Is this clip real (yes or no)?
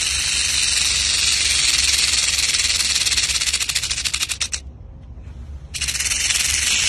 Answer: yes